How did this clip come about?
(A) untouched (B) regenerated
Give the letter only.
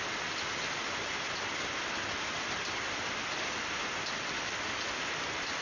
A